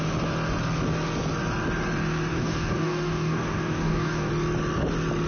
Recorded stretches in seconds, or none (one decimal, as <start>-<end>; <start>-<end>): 0.0-2.3; 4.3-5.3